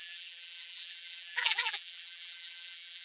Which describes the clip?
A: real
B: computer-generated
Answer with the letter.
B